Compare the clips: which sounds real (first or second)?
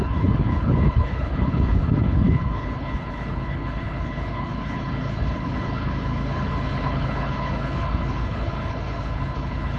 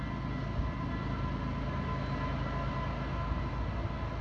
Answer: second